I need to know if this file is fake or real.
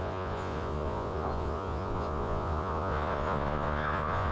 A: fake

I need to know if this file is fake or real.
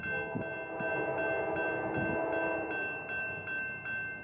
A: real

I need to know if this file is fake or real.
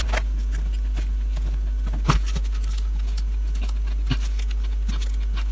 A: real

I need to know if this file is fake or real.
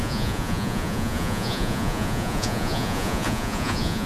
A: fake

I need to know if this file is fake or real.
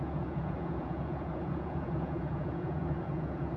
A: fake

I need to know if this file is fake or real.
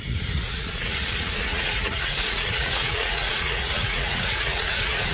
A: fake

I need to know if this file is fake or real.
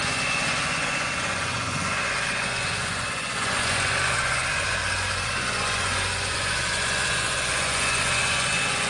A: fake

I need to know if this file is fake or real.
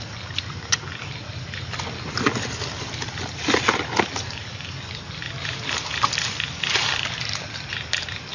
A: real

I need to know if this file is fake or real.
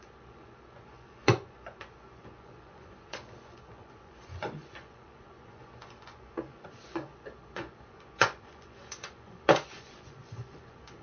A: fake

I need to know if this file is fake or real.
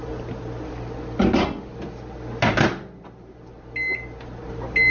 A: real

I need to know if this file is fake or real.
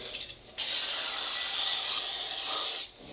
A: real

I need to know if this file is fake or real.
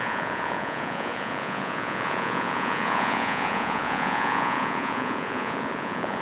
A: fake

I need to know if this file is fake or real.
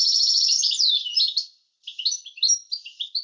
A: real